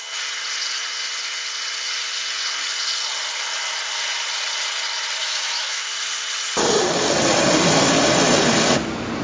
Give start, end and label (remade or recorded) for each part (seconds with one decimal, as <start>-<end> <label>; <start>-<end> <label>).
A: 0.0-5.2 recorded; 5.2-5.9 remade; 5.9-9.2 recorded